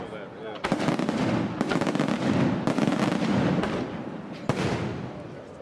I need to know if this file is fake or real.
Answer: real